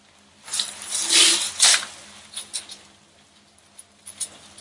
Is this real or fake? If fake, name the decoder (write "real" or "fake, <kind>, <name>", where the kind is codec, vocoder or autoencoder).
real